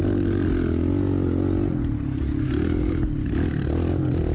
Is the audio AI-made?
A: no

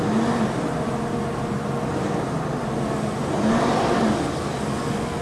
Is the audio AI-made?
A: no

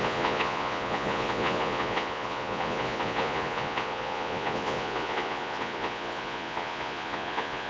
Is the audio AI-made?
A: yes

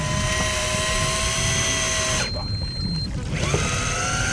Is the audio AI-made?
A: no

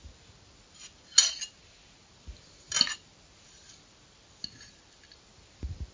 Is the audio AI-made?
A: no